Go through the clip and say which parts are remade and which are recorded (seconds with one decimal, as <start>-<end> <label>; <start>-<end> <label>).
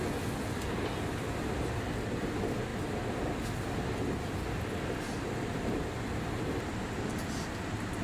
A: 0.0-8.0 recorded